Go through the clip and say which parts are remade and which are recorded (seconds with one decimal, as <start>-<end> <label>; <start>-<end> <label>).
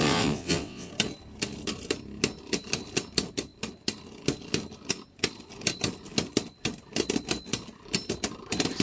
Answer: 0.0-0.9 remade; 0.9-8.8 recorded